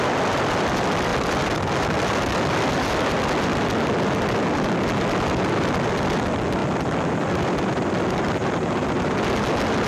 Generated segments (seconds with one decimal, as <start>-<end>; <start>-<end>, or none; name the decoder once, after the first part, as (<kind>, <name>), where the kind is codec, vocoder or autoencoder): none